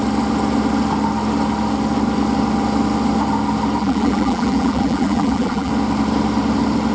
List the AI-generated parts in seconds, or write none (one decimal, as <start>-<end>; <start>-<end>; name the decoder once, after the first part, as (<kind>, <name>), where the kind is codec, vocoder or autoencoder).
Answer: 3.8-5.7 (vocoder, BigVGAN v2)